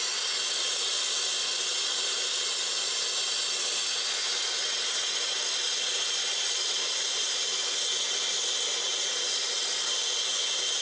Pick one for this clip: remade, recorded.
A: recorded